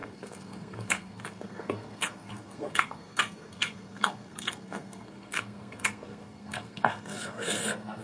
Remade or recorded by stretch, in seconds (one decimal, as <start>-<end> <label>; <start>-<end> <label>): 0.0-8.0 remade